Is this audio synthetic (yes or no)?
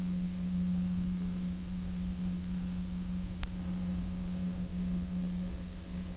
yes